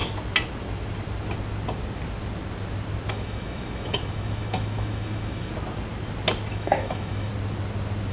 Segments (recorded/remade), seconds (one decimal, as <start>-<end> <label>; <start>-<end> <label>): 0.0-3.1 recorded; 3.1-5.5 remade; 5.5-6.5 recorded; 6.5-7.3 remade; 7.3-8.1 recorded